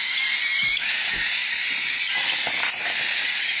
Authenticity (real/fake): real